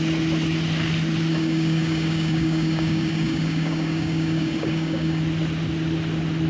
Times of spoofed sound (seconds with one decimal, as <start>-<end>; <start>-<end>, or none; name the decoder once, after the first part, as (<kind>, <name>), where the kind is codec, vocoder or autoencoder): 1.3-5.2 (codec, DAC)